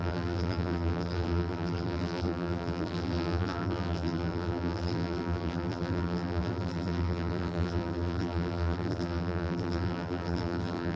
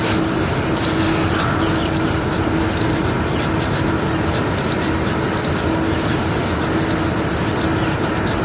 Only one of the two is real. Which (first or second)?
second